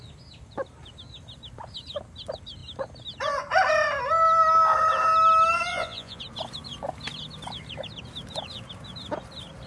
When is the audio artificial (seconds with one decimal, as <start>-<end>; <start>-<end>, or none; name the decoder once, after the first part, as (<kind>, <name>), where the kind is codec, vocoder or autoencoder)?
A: 5.7-6.2 (vocoder, Vocos)